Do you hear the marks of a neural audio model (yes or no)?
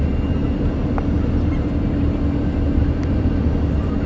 no